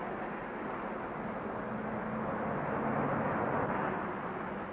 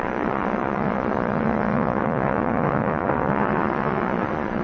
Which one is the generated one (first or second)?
second